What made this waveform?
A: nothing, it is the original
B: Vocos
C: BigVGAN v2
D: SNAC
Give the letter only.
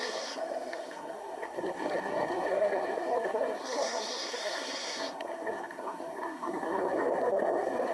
D